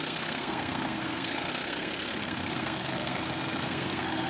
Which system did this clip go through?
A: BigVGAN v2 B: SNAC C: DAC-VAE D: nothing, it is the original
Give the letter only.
B